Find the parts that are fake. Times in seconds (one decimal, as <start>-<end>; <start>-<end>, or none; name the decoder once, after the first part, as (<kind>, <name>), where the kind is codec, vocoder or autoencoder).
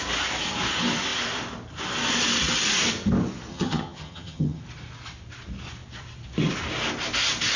3.5-4.6 (vocoder, HiFi-GAN)